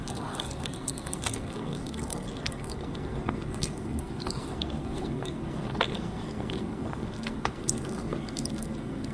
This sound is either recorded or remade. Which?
remade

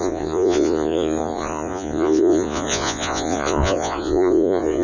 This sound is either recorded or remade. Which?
remade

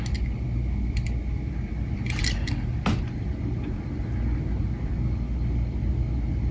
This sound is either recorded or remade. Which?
recorded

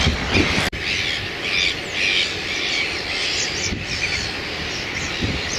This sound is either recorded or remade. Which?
recorded